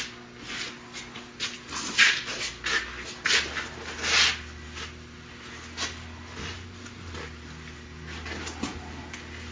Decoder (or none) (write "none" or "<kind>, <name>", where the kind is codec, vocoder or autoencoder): none